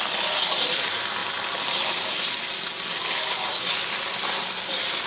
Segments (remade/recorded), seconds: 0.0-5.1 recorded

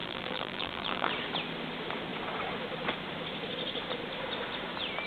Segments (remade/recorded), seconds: 0.0-1.1 remade; 1.1-5.1 recorded

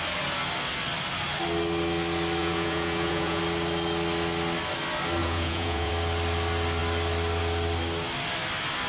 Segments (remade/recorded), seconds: 0.0-2.4 recorded; 2.4-3.4 remade; 3.4-5.2 recorded; 5.2-5.9 remade; 5.9-8.9 recorded